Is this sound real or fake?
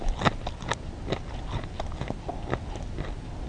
real